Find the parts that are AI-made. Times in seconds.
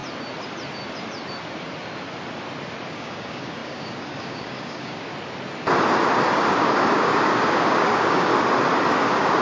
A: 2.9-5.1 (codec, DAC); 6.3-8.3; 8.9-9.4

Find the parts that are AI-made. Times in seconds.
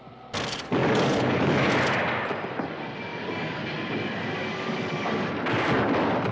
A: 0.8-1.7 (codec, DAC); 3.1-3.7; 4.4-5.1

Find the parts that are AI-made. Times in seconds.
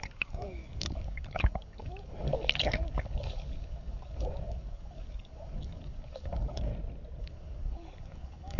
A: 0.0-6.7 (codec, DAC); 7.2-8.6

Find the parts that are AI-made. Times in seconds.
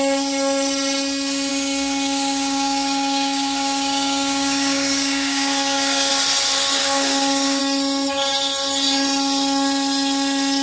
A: 1.5-6.1 (codec, DAC); 6.8-7.6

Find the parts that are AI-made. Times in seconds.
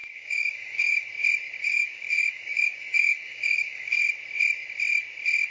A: 0.0-1.1 (codec, DAC); 1.6-4.0